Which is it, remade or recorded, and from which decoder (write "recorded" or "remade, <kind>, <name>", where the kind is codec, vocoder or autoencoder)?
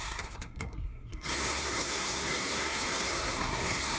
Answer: remade, codec, SNAC